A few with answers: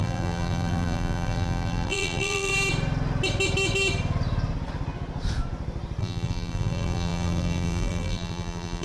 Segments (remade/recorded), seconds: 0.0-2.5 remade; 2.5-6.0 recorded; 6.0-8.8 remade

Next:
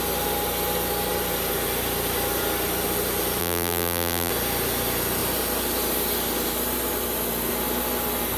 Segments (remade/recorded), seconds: 0.0-3.4 recorded; 3.4-4.3 remade; 4.3-8.4 recorded